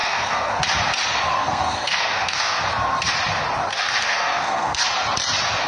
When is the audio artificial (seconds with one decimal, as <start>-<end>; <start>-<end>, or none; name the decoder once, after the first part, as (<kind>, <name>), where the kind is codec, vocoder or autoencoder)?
0.0-0.6 (codec, SNAC); 1.3-2.6; 3.7-4.9